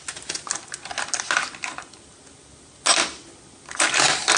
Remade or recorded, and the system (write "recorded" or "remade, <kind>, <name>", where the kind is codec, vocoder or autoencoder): recorded